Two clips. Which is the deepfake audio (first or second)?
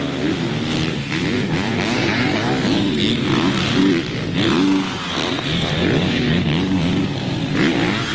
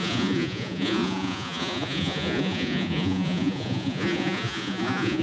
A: second